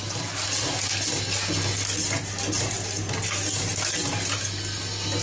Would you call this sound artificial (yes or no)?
no